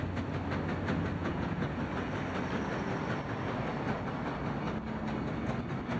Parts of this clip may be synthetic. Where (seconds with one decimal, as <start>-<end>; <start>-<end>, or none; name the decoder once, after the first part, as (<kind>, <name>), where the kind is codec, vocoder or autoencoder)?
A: 1.2-1.8 (vocoder, Vocos)